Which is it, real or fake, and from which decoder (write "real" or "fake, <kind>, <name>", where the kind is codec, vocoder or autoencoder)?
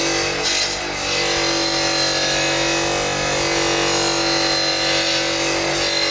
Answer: real